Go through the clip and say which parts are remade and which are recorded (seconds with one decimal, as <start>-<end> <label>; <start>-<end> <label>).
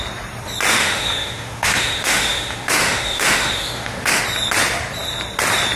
0.0-0.7 recorded; 0.7-4.2 remade; 4.2-5.8 recorded